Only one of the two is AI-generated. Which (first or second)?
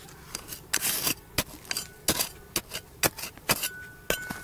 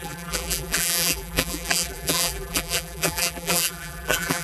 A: second